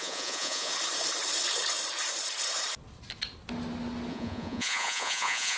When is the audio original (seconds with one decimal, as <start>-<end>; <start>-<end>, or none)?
0.7-4.1